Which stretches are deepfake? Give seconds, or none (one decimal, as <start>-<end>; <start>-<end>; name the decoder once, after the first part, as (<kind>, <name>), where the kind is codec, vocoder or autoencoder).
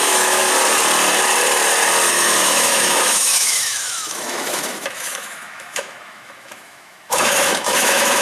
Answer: 0.0-0.4 (autoencoder, DAC-VAE); 2.1-8.2